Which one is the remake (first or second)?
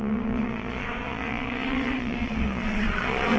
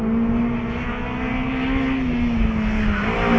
first